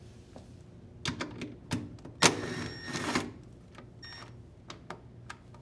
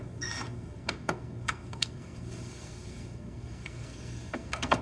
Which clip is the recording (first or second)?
first